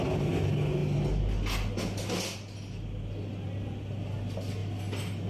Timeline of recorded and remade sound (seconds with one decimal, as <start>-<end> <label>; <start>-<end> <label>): 0.0-5.3 recorded